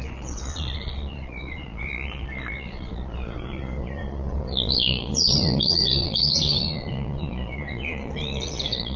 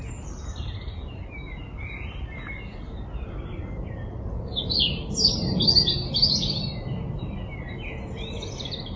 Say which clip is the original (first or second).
second